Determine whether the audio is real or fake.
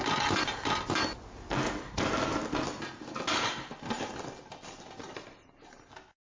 real